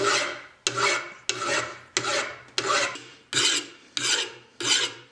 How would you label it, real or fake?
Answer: real